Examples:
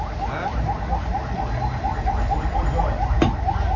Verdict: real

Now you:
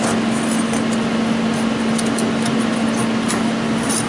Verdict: real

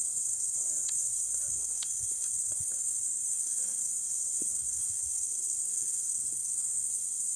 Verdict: fake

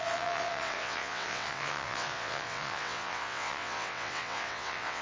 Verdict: fake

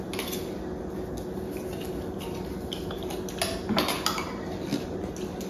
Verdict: real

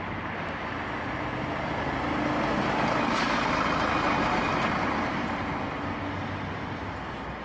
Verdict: real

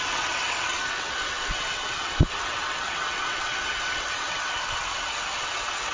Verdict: fake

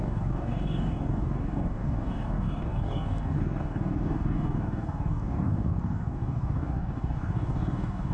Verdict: fake